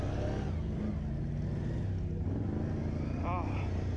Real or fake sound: real